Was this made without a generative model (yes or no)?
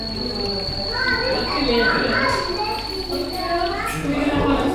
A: yes